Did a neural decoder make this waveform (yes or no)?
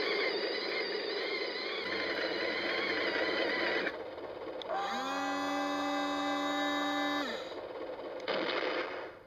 no